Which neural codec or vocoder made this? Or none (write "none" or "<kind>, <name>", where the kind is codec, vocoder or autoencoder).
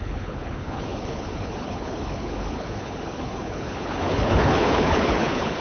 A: codec, HILCodec